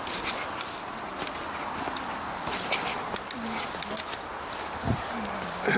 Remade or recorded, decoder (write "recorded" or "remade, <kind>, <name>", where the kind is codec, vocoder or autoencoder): recorded